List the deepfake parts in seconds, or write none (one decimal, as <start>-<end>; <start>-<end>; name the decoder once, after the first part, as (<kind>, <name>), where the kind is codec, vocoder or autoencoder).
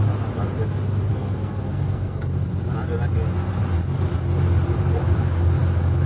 1.1-2.3 (codec, SNAC)